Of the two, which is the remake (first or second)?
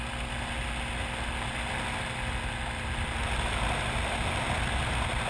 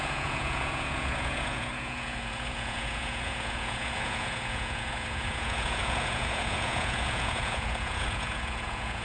second